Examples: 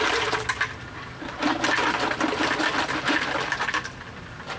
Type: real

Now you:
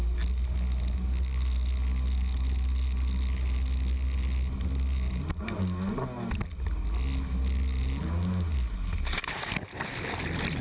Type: real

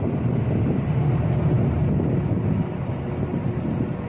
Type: real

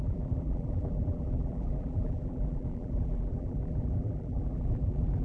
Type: fake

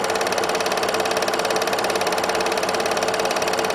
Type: fake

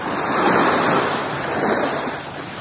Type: fake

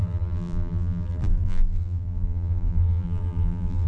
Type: fake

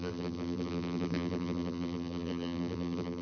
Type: fake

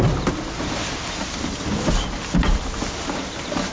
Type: fake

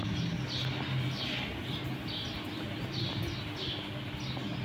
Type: real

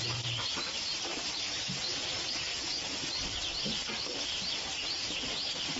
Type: fake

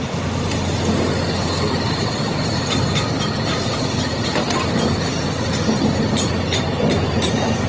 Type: real